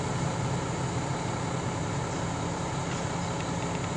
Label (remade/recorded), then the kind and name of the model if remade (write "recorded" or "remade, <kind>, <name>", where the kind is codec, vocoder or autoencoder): recorded